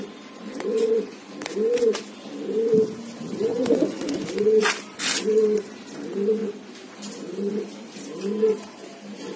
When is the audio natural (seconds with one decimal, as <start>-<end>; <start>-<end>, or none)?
0.0-0.4; 1.3-3.5; 4.7-9.4